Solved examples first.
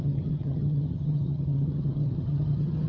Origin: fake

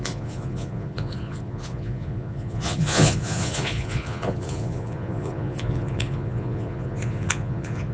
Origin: fake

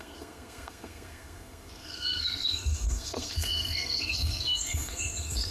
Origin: fake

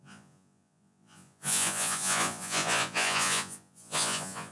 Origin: fake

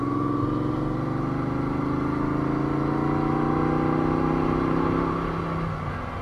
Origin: real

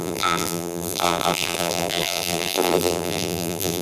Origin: fake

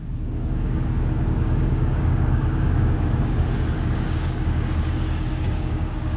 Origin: fake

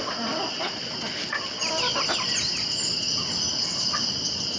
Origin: real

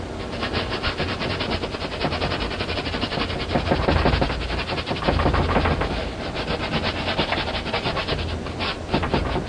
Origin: real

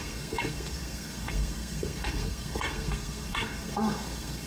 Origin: fake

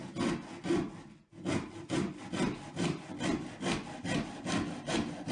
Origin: real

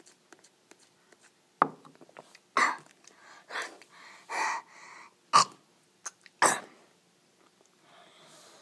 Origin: real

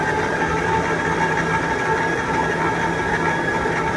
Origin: real